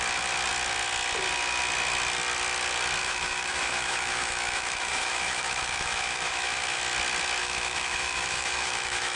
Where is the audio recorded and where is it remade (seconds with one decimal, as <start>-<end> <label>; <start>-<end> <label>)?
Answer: 0.0-3.0 recorded; 3.0-6.8 remade; 6.8-7.4 recorded; 7.4-9.2 remade